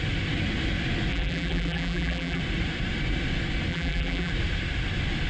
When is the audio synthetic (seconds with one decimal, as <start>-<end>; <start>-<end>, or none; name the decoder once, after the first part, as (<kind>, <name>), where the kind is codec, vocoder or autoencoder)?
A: 1.1-2.4 (vocoder, BigVGAN v2); 3.7-4.3